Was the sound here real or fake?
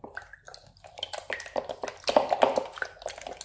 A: real